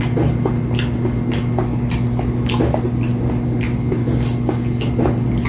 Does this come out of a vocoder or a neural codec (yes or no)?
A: no